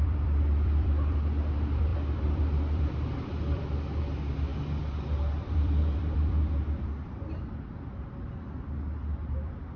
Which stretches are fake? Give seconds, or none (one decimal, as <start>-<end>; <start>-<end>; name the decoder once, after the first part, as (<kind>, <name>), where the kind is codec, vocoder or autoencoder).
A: 0.0-9.8 (vocoder, BigVGAN v2)